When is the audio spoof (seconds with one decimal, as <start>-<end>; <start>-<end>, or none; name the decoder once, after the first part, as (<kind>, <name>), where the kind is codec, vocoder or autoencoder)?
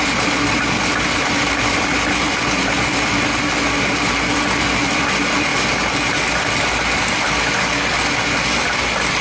none